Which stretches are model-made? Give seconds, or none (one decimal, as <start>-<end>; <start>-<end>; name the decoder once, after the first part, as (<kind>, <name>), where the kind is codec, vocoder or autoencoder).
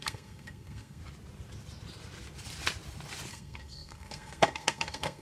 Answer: 0.0-1.0 (codec, SNAC); 3.3-5.2